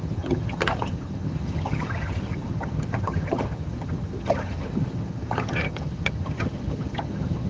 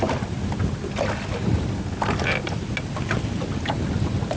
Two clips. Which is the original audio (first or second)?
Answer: second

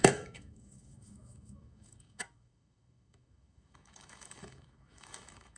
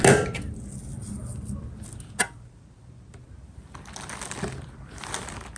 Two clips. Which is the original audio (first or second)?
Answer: second